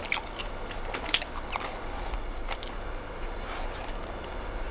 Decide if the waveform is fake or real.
real